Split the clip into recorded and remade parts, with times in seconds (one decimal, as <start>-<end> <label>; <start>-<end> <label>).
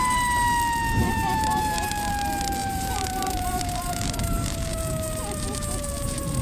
0.0-1.0 recorded; 1.0-2.1 remade; 2.1-2.6 recorded; 2.6-6.4 remade